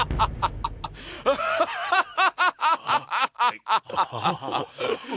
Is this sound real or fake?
fake